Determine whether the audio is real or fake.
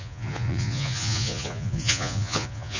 fake